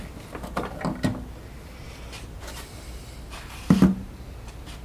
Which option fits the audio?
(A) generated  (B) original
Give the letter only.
B